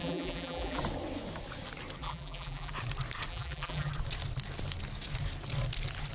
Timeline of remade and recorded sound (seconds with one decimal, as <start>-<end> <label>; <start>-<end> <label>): 0.0-0.8 remade; 0.8-2.0 recorded; 2.0-2.7 remade; 2.7-3.3 recorded; 3.3-3.9 remade; 3.9-6.1 recorded